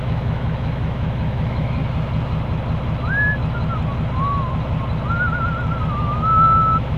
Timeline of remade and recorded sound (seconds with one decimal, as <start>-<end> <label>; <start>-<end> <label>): 0.0-1.8 remade; 1.8-6.0 recorded; 6.0-7.0 remade